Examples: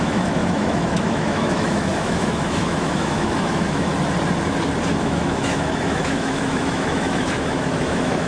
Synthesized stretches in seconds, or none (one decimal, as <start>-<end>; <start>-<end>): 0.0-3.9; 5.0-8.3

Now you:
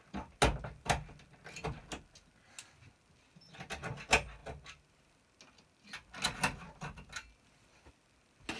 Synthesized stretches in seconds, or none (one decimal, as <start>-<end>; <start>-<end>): none

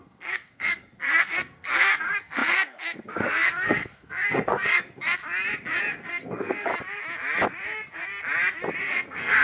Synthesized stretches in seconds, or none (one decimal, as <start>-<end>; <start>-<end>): 0.0-5.2; 5.9-6.7; 8.8-9.4

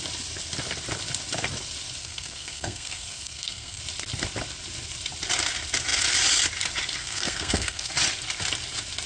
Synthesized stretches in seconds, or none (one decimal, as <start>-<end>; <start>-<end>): 2.0-3.8; 7.0-7.9

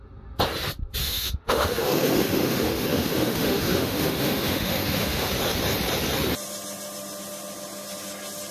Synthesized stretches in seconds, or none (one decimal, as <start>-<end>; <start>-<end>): 1.0-5.3

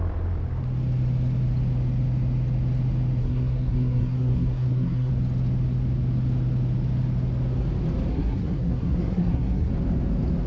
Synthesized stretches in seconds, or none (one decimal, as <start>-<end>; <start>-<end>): 3.2-5.1; 8.1-9.7

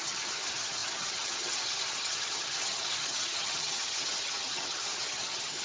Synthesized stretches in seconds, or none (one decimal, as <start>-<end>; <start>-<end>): 0.0-5.6

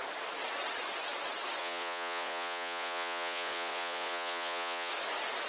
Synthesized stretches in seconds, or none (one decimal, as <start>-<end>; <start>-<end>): 1.6-4.9